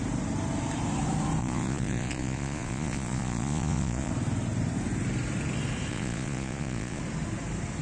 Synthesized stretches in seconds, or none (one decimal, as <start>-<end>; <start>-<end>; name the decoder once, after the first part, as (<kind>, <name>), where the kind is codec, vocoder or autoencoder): 1.4-4.1 (vocoder, Vocos); 5.9-7.0

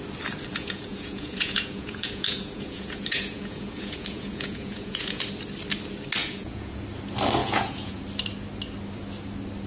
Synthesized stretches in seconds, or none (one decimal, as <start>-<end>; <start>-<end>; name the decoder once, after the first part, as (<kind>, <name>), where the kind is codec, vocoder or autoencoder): 0.5-5.2 (vocoder, Vocos); 6.2-6.7; 7.4-8.0

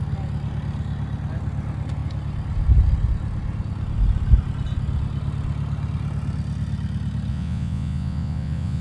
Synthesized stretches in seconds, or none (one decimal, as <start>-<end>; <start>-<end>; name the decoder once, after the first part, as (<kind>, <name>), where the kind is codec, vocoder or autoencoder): 7.3-8.8 (vocoder, Vocos)

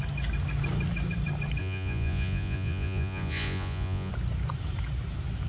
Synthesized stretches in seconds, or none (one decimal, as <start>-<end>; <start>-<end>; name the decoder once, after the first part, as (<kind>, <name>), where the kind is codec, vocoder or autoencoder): 1.6-4.1 (vocoder, Vocos)

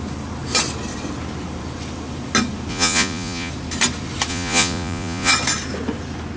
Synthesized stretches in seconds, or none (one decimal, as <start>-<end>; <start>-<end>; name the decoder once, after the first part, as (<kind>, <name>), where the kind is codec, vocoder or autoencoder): 2.7-3.5 (vocoder, Vocos); 4.3-5.3

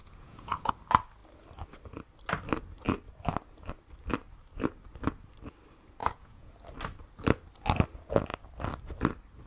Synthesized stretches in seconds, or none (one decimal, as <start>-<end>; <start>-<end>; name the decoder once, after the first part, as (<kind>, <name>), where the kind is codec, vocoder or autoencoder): 0.0-0.7 (vocoder, Vocos); 6.0-6.5